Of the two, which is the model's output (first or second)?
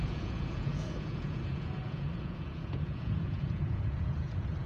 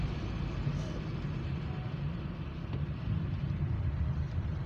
first